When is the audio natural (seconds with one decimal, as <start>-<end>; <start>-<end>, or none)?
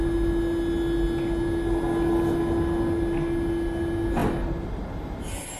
0.0-5.6